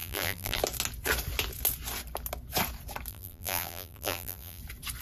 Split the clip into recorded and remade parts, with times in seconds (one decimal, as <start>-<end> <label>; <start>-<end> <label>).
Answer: 0.0-0.6 remade; 0.6-3.1 recorded; 3.1-4.6 remade; 4.6-5.0 recorded